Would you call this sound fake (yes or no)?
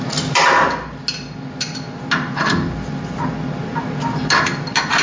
no